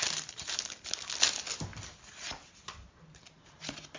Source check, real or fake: real